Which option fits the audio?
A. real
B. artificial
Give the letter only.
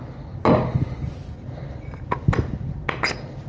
A